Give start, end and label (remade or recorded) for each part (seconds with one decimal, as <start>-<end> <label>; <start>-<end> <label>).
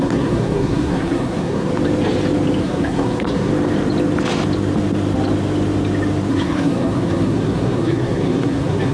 0.0-1.7 remade; 1.7-2.6 recorded; 2.6-3.5 remade; 3.5-6.3 recorded; 6.3-8.9 remade